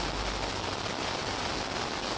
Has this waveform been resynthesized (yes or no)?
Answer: no